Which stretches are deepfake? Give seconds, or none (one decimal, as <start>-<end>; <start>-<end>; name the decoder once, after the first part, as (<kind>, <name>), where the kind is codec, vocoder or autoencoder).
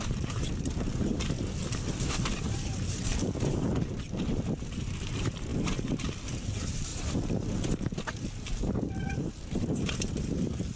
0.0-0.9 (vocoder, BigVGAN v2); 2.0-10.8